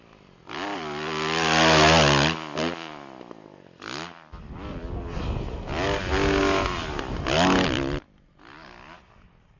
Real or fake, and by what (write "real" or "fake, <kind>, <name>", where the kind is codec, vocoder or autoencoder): real